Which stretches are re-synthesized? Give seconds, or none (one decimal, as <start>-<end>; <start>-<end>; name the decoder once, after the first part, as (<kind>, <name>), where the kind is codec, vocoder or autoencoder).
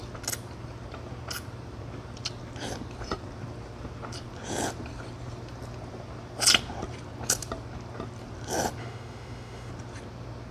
8.8-9.7 (autoencoder, DAC-VAE)